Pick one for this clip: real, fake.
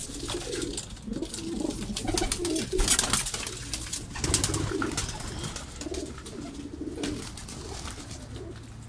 real